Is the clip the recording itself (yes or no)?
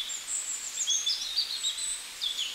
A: no